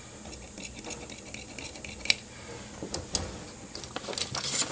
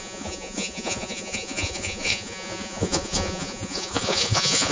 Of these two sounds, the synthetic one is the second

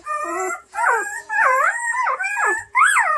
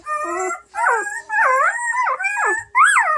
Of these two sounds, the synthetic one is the first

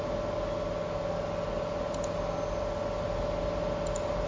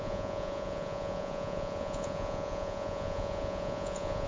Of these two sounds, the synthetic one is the second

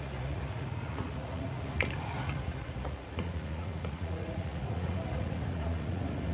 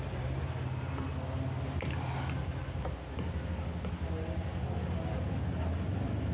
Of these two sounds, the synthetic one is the first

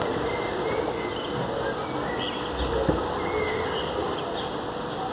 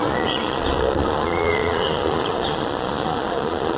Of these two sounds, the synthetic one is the second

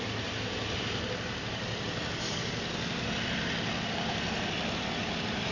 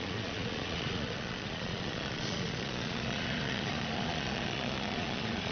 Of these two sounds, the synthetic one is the second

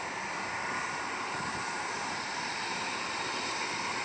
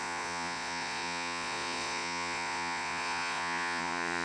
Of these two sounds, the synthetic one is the second